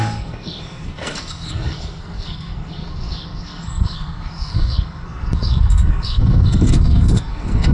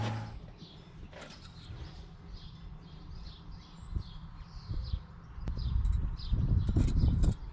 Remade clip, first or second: first